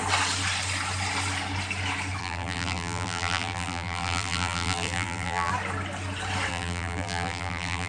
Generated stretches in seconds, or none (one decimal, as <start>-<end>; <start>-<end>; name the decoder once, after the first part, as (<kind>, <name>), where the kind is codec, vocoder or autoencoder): 2.2-5.5 (vocoder, BigVGAN v2); 6.5-7.9